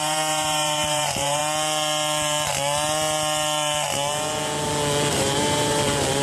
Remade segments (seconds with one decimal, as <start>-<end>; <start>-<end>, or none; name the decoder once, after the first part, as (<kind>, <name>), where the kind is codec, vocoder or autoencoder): 0.0-1.4 (vocoder, BigVGAN v2); 5.1-6.2